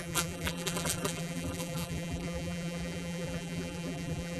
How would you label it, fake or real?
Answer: fake